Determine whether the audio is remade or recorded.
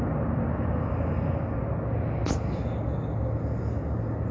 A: recorded